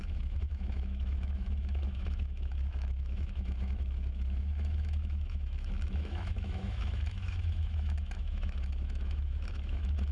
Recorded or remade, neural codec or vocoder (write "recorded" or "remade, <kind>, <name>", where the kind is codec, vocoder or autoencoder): remade, autoencoder, DAC-VAE